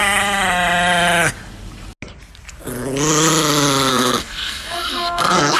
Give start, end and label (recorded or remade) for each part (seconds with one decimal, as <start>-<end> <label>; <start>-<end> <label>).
0.0-3.9 recorded; 3.9-5.6 remade